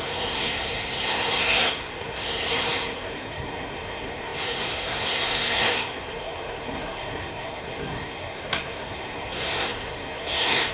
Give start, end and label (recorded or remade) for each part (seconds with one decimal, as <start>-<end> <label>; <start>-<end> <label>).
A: 0.0-10.7 remade